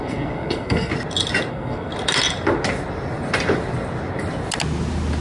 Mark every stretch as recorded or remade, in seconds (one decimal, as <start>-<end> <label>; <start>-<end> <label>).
0.0-0.9 remade; 0.9-1.5 recorded; 1.5-1.9 remade; 1.9-5.2 recorded